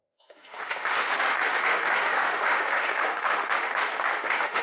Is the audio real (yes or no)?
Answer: no